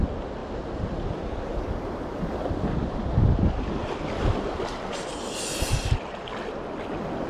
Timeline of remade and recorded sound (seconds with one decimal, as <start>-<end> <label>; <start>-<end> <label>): 0.0-7.3 recorded